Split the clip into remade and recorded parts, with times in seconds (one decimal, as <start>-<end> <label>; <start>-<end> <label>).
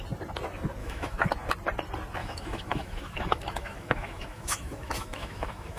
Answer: 0.0-0.8 recorded; 0.8-1.3 remade; 1.3-2.2 recorded; 2.2-5.8 remade